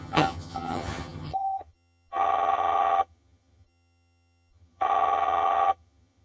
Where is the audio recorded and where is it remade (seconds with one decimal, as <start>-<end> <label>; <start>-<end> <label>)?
0.0-6.2 remade